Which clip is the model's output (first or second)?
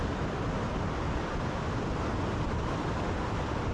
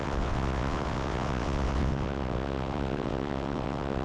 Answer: second